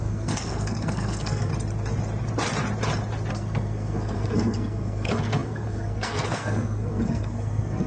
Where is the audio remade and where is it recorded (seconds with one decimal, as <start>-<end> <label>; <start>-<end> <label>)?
0.0-1.5 remade; 1.5-3.3 recorded; 3.3-7.9 remade